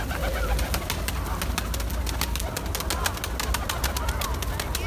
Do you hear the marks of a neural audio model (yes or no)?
no